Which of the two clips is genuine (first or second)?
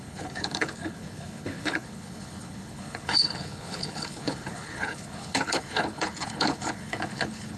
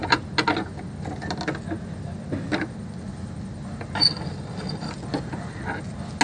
second